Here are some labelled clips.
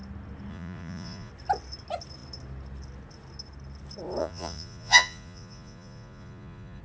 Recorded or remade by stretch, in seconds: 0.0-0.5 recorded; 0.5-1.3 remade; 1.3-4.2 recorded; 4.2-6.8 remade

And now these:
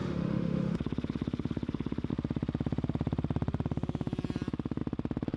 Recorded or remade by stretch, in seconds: 0.0-2.1 remade; 2.1-5.4 recorded

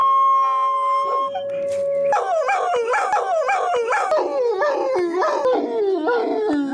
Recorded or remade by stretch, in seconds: 0.0-6.7 recorded